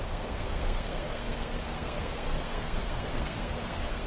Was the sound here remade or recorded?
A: remade